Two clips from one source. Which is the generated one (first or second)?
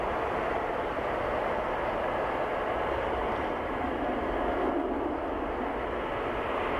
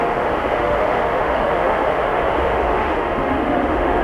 second